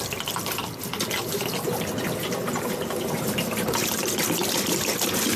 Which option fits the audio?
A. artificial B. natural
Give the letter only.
B